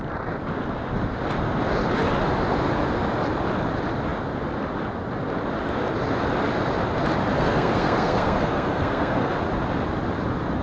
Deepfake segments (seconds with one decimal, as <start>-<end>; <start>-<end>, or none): 7.3-9.3